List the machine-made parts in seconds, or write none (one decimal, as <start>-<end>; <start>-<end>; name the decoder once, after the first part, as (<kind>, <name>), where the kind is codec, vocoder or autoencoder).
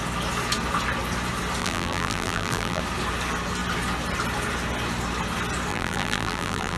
1.6-2.8 (vocoder, BigVGAN v2); 5.7-6.8